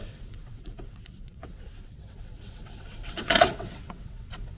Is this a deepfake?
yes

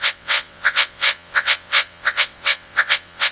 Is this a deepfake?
yes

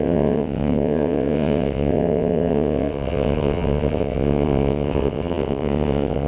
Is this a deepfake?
yes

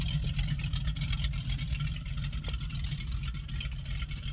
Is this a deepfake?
no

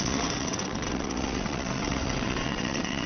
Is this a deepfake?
yes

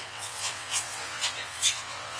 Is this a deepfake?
yes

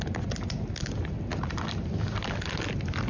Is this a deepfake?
no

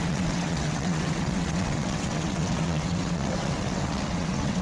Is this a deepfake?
yes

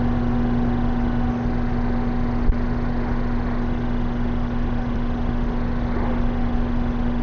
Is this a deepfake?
no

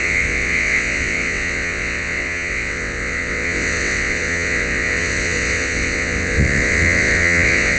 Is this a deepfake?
yes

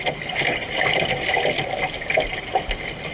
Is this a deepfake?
no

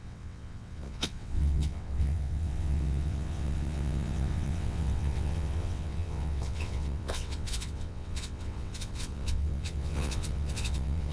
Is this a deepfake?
yes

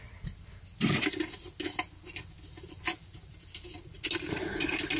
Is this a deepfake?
no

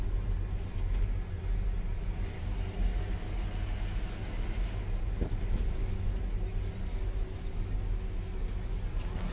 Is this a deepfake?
no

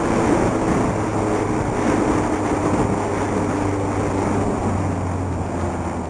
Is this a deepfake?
no